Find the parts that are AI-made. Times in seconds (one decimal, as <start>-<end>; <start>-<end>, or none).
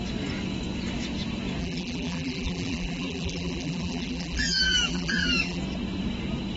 1.6-5.6